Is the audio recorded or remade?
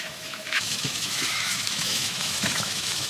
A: remade